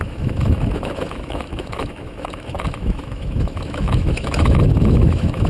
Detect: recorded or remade remade